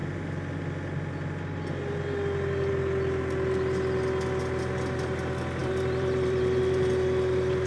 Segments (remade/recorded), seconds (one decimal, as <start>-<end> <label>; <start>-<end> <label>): 0.0-5.6 recorded; 5.6-6.8 remade; 6.8-7.7 recorded